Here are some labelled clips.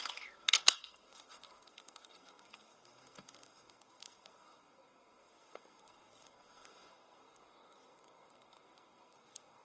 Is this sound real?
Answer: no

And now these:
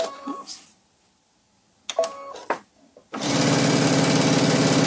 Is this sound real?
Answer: yes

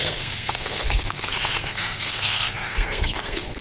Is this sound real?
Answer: no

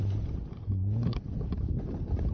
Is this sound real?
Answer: yes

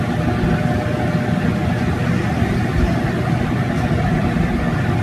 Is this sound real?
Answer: yes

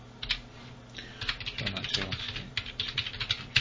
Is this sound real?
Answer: yes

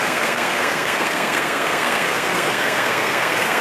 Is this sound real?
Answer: no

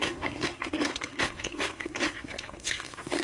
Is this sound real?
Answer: no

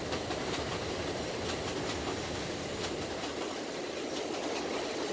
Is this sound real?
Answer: yes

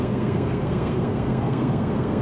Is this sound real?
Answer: no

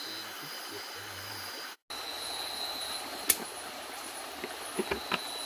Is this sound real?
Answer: yes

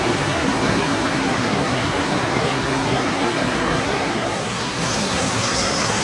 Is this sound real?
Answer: no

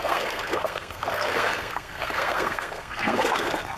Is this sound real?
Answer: no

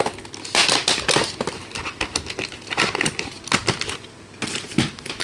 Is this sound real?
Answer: yes